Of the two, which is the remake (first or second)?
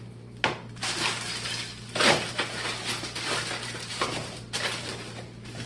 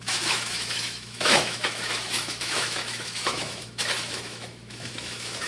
second